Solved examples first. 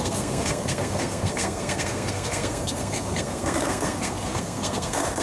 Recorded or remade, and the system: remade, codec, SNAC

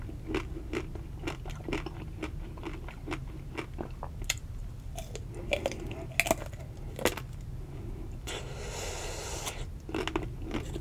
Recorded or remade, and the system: recorded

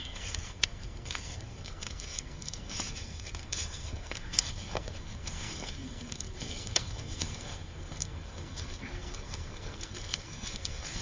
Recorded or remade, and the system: remade, codec, SNAC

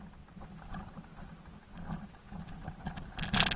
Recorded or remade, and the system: recorded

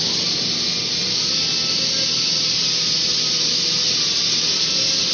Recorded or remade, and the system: recorded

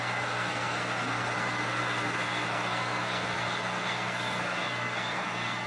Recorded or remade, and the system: remade, codec, SNAC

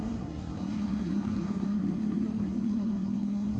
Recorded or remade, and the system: remade, codec, SNAC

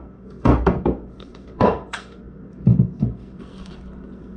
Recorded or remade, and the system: remade, codec, SNAC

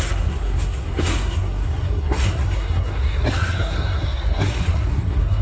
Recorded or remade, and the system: remade, codec, SNAC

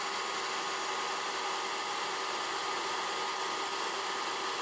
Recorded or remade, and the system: recorded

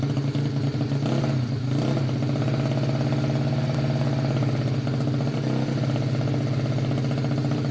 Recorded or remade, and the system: recorded